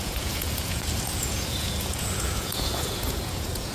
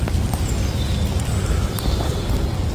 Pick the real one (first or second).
second